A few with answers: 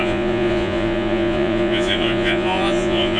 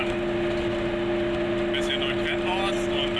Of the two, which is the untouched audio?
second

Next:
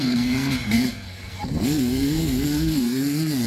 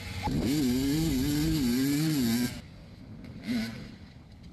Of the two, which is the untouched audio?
second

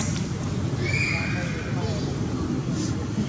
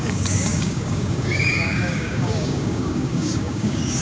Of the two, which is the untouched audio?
first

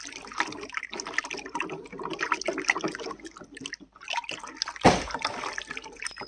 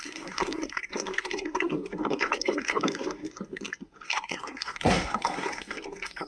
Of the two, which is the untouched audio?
first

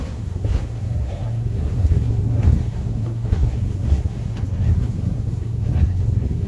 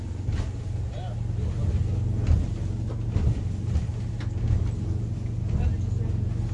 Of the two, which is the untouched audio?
second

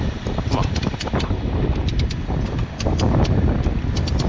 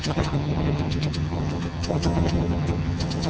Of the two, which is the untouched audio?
first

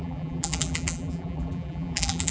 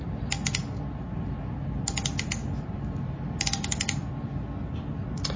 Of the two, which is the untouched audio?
second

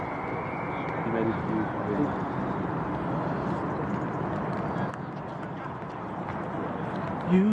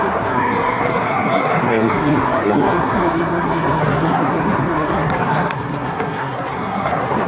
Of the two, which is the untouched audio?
first